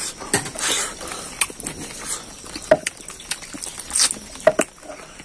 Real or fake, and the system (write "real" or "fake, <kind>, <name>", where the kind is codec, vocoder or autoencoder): real